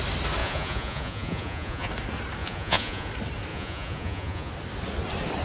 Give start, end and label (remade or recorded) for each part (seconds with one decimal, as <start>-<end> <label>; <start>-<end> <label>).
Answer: 0.0-0.4 recorded; 0.4-1.9 remade; 1.9-2.4 recorded; 2.4-3.1 remade; 3.1-3.5 recorded; 3.5-4.5 remade; 4.5-5.4 recorded